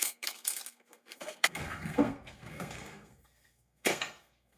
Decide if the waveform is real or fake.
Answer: fake